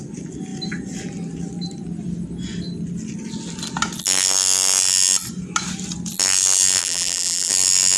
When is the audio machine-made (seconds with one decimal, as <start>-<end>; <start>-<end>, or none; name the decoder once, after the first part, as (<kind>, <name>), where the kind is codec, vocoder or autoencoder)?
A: 6.8-7.5 (vocoder, BigVGAN v2)